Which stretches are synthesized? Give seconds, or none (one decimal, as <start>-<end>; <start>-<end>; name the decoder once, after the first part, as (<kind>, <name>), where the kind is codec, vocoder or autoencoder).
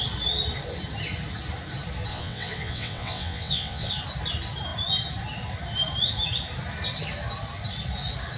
2.1-3.9 (vocoder, WaveNeXt)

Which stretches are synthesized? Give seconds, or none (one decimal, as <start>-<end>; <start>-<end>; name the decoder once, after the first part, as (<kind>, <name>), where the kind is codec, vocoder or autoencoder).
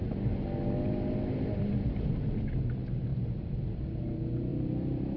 3.1-3.8 (vocoder, BigVGAN v2); 4.5-5.2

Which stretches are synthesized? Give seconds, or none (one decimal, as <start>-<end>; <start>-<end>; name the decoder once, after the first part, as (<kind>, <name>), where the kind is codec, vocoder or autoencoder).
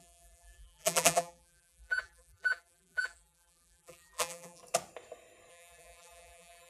0.0-4.6 (vocoder, BigVGAN v2); 5.5-6.7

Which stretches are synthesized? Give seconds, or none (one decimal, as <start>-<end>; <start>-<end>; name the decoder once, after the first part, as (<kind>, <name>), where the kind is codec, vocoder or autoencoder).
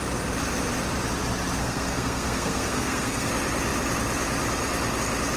1.6-3.3 (codec, SNAC)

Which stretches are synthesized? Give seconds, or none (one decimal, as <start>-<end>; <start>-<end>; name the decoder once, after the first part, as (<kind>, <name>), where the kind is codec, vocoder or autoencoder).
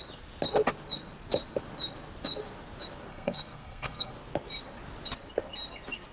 3.1-4.1 (codec, SNAC)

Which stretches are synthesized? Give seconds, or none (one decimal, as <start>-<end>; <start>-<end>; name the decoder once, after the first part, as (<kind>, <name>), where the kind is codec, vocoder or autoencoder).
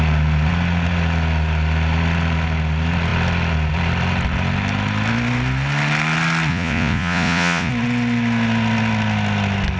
6.5-7.7 (vocoder, Vocos)